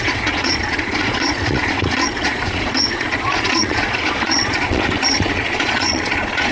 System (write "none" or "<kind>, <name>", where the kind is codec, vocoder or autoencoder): vocoder, Vocos